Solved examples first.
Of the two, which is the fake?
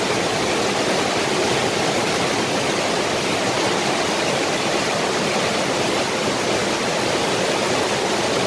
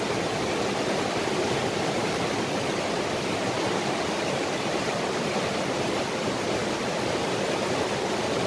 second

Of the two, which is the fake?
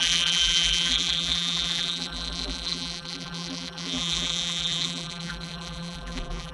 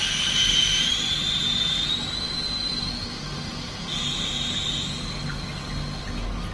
first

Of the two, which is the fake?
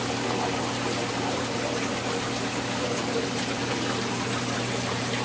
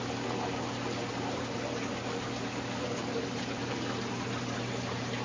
first